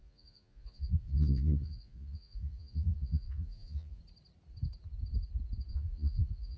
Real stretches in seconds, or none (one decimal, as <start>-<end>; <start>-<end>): 4.0-5.7